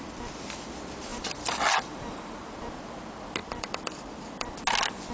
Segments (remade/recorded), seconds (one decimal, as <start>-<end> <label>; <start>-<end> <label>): 0.0-1.1 recorded; 1.1-3.0 remade; 3.0-3.4 recorded; 3.4-4.6 remade; 4.6-5.1 recorded